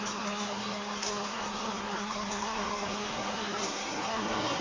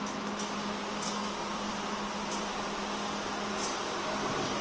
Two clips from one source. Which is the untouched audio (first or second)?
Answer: second